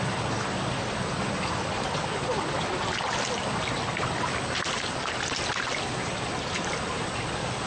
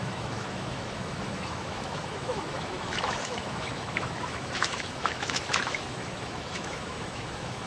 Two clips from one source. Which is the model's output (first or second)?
second